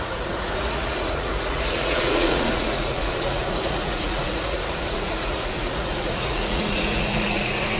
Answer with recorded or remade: remade